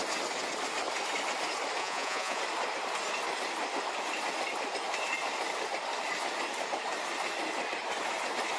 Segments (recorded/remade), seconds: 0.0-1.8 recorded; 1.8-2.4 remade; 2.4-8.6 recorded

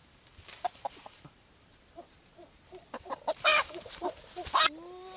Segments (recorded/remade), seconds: 0.0-2.0 remade; 2.0-3.5 recorded; 3.5-4.6 remade; 4.6-5.2 recorded